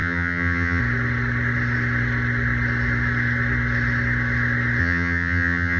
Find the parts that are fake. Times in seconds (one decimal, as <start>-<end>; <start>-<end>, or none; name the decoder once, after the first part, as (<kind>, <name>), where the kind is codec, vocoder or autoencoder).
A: 0.0-0.8 (vocoder, HiFi-GAN); 4.8-5.8